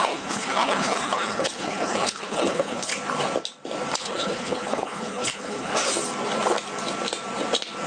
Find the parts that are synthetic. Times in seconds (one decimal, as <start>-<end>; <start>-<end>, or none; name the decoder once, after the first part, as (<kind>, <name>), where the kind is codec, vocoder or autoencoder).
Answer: 0.0-2.9 (codec, HILCodec); 4.0-5.7